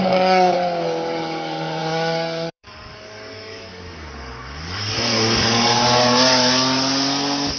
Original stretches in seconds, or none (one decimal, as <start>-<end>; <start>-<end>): 5.8-7.6

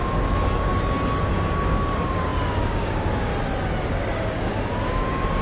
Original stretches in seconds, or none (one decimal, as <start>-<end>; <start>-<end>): 0.7-1.2; 3.3-3.8

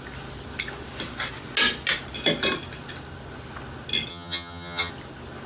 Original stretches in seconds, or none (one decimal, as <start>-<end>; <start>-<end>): 0.0-4.1; 4.9-5.5

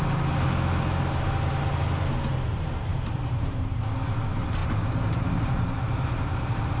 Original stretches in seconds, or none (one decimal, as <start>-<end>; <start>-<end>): 0.0-2.9; 3.8-4.6